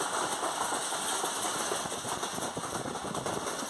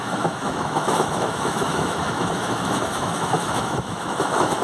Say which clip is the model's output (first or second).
second